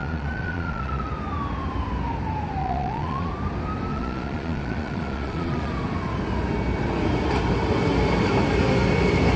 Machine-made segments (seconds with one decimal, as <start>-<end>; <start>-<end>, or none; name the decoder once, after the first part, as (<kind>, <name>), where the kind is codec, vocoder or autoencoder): 0.0-1.1 (vocoder, Vocos); 2.6-3.3; 3.9-5.7